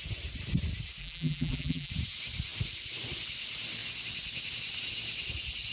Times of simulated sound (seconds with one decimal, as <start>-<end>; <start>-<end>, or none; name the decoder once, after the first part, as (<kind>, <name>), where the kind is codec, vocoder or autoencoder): 1.0-1.9 (vocoder, BigVGAN v2)